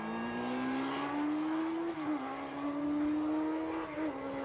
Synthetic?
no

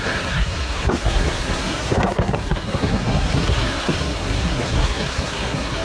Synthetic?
yes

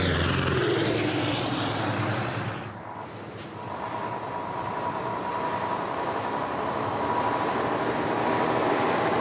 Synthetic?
no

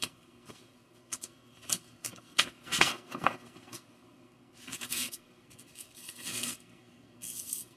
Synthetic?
yes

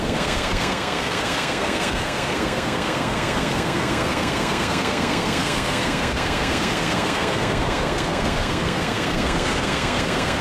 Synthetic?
yes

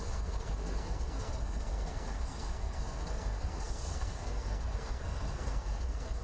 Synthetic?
yes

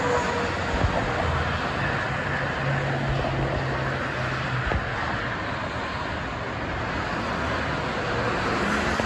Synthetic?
no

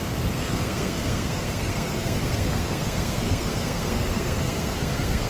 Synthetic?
yes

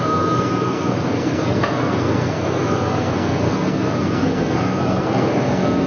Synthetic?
yes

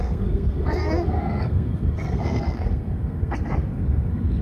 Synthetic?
yes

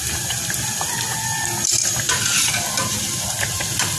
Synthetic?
no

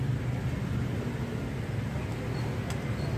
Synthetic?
no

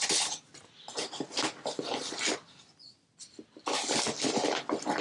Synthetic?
no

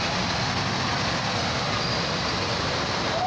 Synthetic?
no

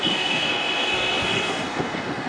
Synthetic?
yes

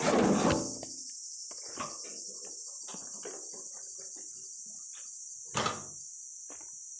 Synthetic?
no